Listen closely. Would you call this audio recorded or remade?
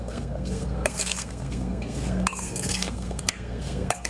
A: remade